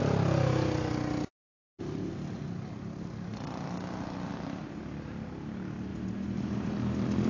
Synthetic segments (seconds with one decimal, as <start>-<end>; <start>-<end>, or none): 5.9-7.3